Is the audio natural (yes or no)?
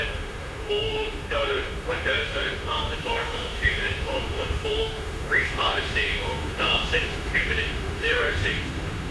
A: no